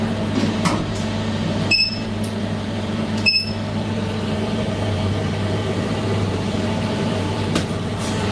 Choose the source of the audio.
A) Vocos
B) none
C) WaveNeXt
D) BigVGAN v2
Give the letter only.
D